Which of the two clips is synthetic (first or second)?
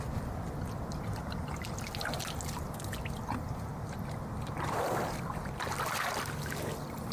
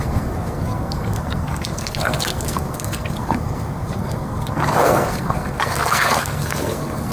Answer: second